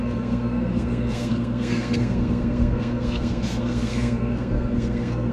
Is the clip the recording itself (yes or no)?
no